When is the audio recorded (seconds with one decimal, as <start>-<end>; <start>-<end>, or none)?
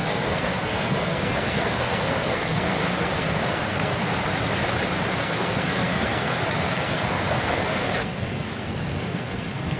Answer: 4.2-5.1